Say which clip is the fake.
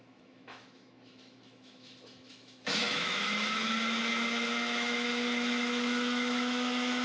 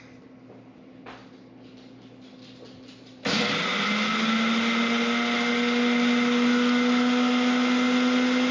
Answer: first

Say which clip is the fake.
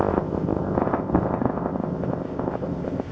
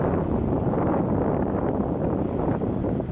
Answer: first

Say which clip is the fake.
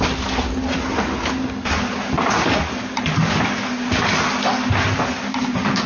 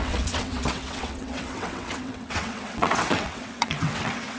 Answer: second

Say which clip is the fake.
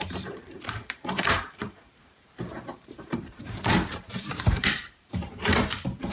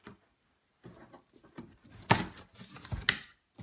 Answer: first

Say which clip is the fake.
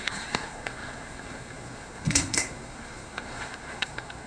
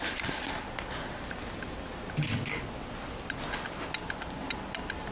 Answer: first